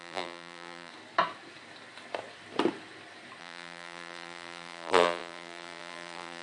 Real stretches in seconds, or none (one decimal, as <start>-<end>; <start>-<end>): 0.9-3.4